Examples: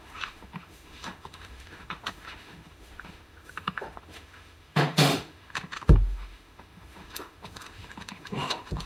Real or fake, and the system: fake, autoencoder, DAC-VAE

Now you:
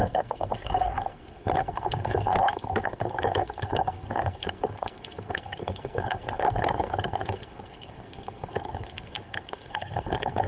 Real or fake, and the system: fake, codec, SNAC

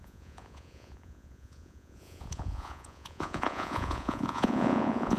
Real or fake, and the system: fake, vocoder, Vocos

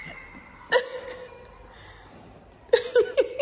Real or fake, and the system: real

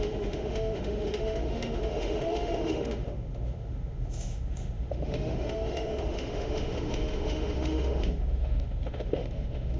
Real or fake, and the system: fake, autoencoder, DAC-VAE